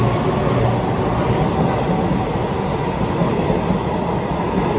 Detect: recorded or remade recorded